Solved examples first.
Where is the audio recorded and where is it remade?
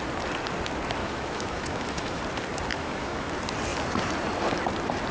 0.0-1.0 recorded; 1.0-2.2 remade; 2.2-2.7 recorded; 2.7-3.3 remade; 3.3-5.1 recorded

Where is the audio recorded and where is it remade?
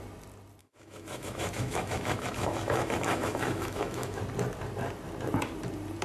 0.0-0.6 recorded; 0.6-4.2 remade; 4.2-6.0 recorded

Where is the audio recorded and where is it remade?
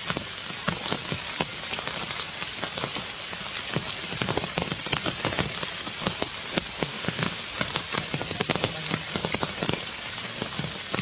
0.0-6.8 recorded; 6.8-7.4 remade; 7.4-11.0 recorded